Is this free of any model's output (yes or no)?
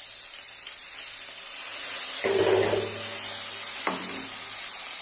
yes